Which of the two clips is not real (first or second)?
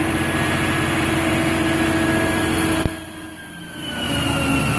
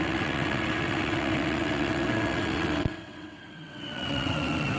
second